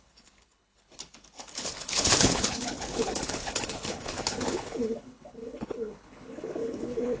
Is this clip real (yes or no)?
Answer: no